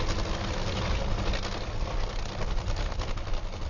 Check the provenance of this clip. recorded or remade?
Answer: recorded